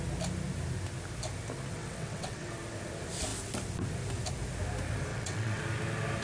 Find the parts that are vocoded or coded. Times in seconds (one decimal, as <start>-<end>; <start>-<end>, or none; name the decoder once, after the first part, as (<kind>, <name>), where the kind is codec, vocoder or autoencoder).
1.7-2.5 (vocoder, WaveNeXt); 5.1-5.6